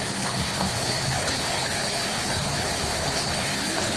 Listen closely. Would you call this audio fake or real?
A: fake